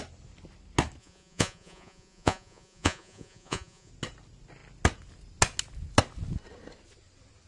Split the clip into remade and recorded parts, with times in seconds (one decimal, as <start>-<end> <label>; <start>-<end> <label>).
0.0-1.0 recorded; 1.0-3.9 remade; 3.9-7.5 recorded